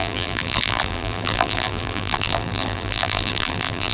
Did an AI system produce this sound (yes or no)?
yes